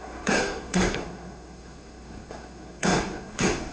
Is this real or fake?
fake